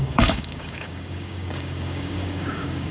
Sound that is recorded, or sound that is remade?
remade